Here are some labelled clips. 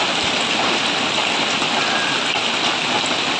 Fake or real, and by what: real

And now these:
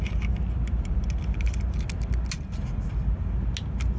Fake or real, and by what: real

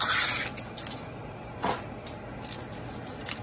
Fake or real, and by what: real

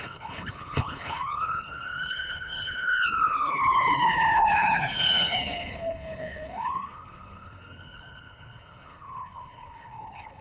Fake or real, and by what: fake, codec, HILCodec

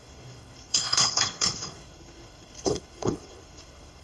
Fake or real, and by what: fake, codec, HILCodec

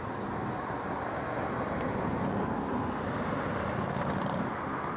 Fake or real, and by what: real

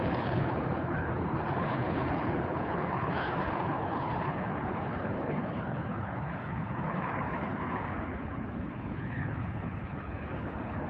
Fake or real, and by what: fake, codec, HILCodec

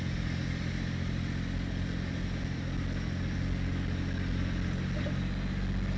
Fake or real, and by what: real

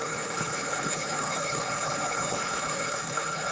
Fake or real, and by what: fake, codec, HILCodec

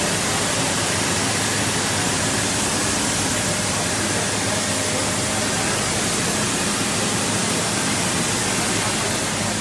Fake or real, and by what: real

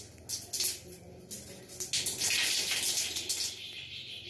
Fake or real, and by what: real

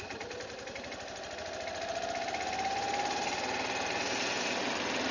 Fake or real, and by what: real